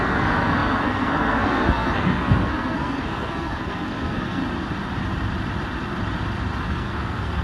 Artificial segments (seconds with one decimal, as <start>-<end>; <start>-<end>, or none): 0.0-4.4; 6.6-7.4